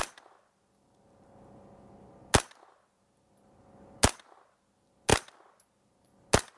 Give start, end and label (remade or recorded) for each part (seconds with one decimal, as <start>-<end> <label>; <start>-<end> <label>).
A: 0.0-6.6 recorded